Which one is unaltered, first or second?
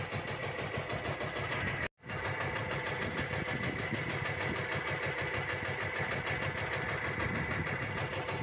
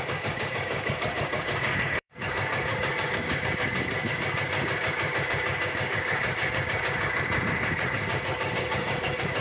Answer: first